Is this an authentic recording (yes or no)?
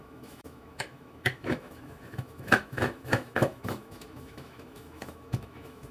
no